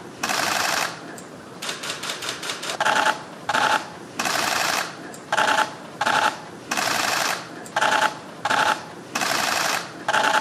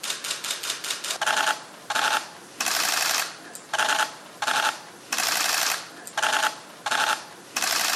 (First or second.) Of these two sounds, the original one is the second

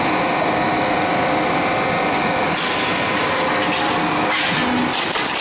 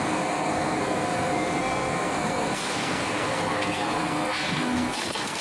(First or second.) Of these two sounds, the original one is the first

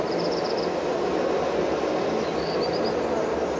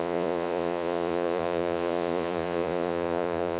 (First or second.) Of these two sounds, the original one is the first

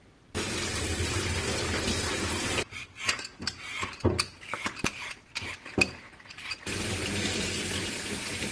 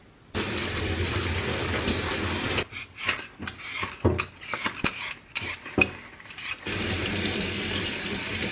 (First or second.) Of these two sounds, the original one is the second